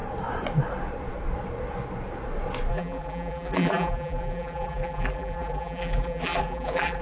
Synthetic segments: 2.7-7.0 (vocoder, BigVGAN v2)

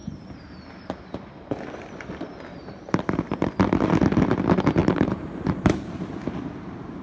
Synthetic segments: 2.5-3.5 (vocoder, BigVGAN v2); 4.8-6.1

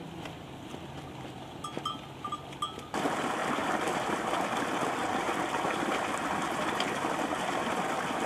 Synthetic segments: 3.4-7.7 (vocoder, BigVGAN v2)

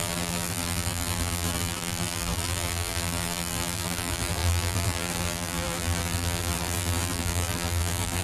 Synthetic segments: 0.0-8.2 (vocoder, BigVGAN v2)

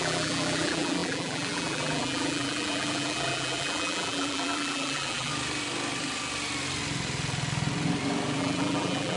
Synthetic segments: 0.0-5.3 (vocoder, BigVGAN v2); 8.4-9.2

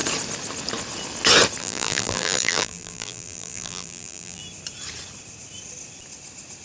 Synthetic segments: 1.6-4.4 (vocoder, BigVGAN v2)

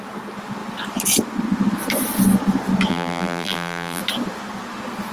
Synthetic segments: 2.9-4.0 (vocoder, BigVGAN v2)